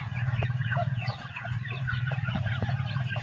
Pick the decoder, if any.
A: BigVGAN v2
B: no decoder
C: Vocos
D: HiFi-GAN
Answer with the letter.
C